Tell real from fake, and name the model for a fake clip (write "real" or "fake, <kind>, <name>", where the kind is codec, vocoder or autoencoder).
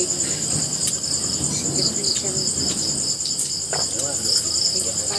real